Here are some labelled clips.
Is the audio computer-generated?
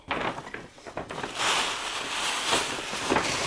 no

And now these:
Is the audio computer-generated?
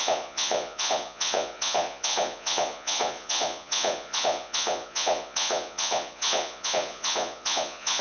yes